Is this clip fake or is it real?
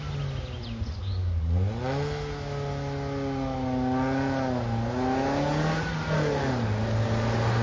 real